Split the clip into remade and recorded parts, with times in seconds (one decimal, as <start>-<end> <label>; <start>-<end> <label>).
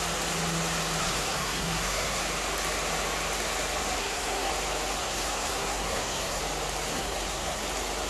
0.0-1.0 recorded; 1.0-2.2 remade; 2.2-4.0 recorded; 4.0-4.5 remade; 4.5-5.0 recorded; 5.0-6.4 remade; 6.4-6.9 recorded; 6.9-7.6 remade; 7.6-8.1 recorded